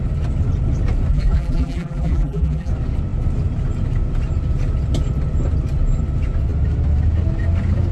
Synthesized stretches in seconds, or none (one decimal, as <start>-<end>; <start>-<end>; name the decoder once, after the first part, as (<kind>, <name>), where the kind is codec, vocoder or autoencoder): 1.1-2.7 (vocoder, BigVGAN v2)